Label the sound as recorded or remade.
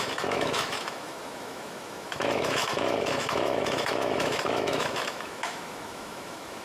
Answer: remade